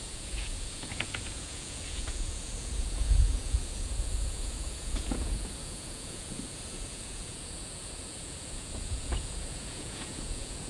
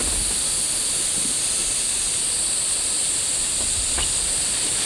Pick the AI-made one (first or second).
first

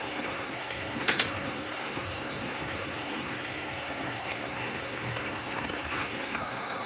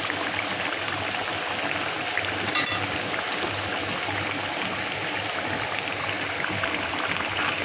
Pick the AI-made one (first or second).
first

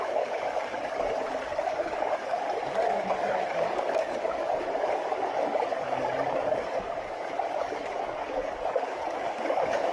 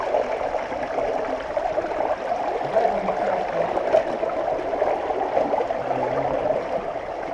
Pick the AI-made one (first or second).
first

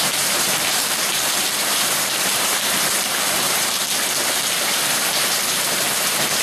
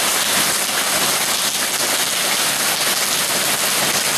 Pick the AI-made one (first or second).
first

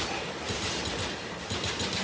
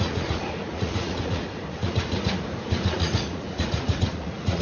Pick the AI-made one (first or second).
second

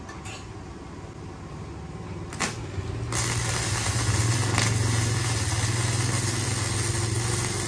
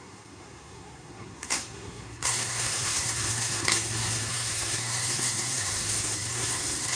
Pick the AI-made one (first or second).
second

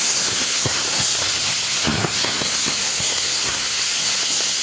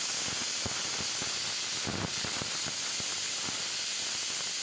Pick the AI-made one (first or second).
first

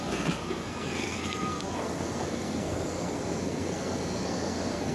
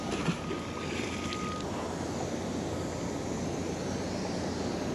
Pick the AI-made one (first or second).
first